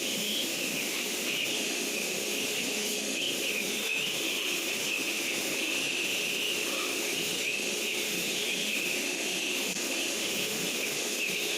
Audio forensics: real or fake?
fake